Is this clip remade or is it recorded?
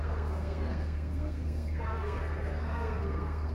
remade